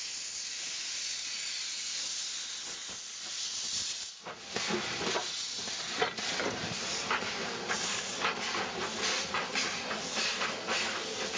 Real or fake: real